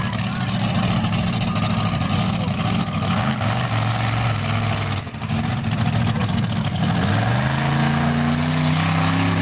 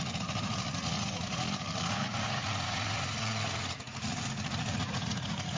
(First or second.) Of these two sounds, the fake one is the second